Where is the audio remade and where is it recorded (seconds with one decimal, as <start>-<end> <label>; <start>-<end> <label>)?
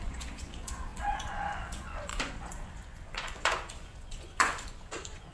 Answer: 0.0-5.3 remade